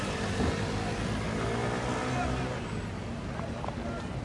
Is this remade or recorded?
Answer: recorded